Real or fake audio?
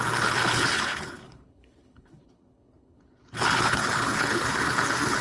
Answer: fake